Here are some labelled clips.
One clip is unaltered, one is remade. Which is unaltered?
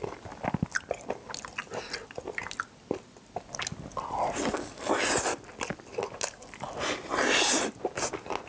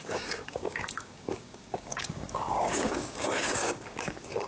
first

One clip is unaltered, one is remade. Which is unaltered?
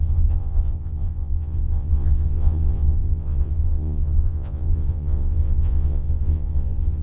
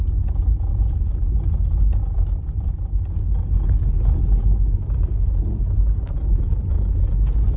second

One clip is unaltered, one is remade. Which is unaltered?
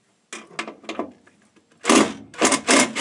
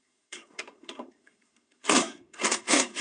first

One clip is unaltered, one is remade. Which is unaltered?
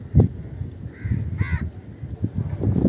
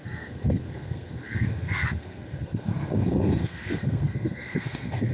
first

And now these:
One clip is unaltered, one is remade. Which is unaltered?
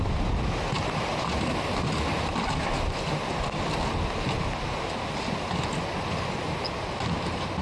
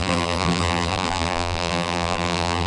first